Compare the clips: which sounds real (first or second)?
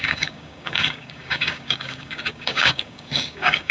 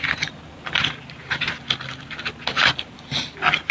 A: second